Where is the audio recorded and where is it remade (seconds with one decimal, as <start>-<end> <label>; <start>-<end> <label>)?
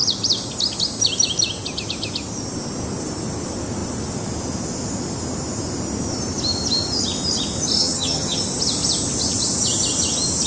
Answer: 0.0-7.8 recorded; 7.8-8.4 remade; 8.4-10.5 recorded